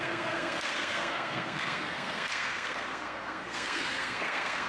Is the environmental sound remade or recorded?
remade